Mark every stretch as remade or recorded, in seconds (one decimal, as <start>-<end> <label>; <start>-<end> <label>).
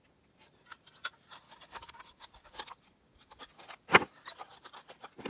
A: 0.0-4.5 recorded; 4.5-5.3 remade